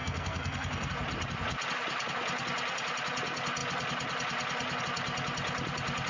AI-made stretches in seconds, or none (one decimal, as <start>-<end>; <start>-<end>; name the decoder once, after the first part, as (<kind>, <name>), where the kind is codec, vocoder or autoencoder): 0.0-0.9 (codec, SNAC)